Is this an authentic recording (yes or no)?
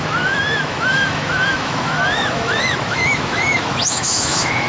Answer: no